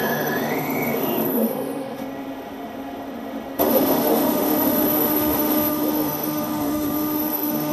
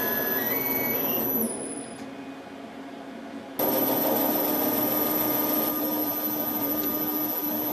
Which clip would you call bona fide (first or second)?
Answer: second